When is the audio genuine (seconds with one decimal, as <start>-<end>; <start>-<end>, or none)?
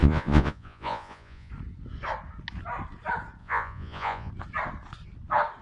1.5-3.4; 4.3-5.6